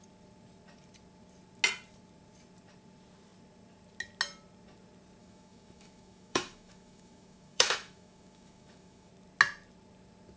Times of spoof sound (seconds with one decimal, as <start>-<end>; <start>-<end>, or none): 5.2-9.1